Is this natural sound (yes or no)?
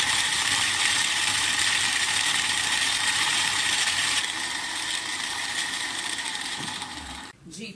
no